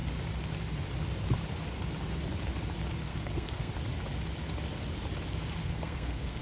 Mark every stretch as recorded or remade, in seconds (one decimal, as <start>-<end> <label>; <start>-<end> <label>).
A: 0.0-3.1 recorded; 3.1-3.7 remade; 3.7-5.6 recorded; 5.6-6.4 remade